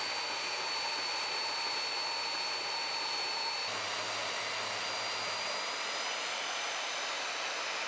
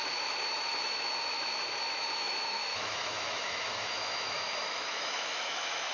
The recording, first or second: first